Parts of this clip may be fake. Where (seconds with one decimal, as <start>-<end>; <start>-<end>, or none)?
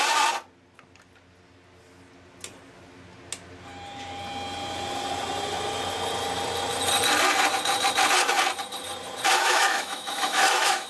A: 9.3-10.9